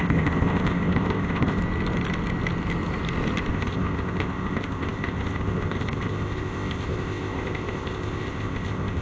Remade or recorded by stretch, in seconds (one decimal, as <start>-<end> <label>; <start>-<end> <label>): 0.0-1.6 remade; 1.6-3.5 recorded; 3.5-9.0 remade